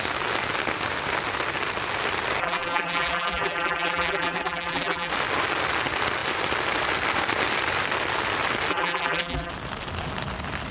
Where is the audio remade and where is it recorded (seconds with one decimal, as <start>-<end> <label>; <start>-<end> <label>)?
0.0-2.4 recorded; 2.4-5.1 remade; 5.1-8.7 recorded; 8.7-9.5 remade; 9.5-10.7 recorded